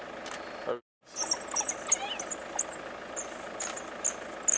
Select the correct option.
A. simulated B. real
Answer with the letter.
B